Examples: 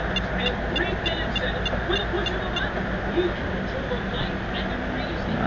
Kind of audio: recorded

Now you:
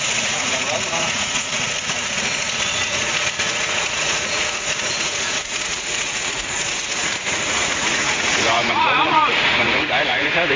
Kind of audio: remade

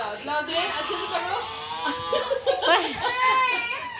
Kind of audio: recorded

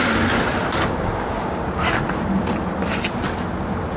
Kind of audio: recorded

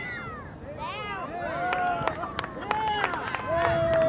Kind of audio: recorded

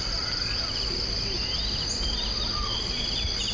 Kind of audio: recorded